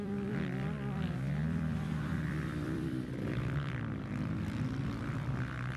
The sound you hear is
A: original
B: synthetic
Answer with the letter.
B